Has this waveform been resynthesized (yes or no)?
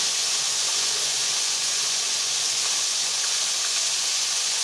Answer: yes